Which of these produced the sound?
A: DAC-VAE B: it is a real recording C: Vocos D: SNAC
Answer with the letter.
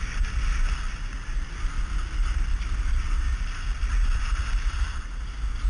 B